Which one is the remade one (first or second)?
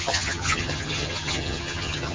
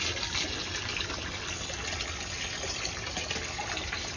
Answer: first